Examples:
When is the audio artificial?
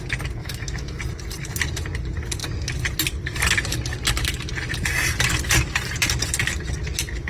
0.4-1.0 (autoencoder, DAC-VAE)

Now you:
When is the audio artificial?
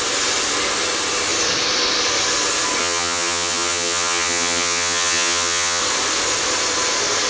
2.8-5.8 (vocoder, HiFi-GAN)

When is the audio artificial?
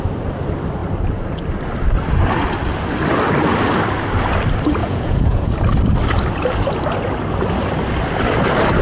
4.8-5.5 (vocoder, Vocos)